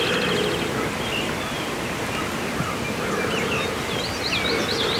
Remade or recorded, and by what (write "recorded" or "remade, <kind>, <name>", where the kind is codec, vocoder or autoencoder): recorded